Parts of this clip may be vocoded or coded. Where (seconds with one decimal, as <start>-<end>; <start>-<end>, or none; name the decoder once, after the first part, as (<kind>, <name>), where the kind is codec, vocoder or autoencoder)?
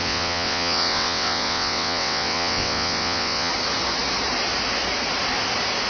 0.0-3.5 (vocoder, WaveNeXt)